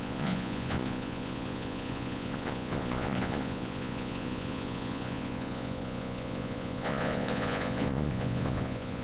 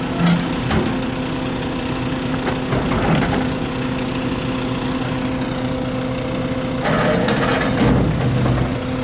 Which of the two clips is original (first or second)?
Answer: second